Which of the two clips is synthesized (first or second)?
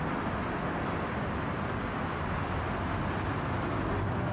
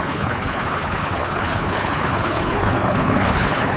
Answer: second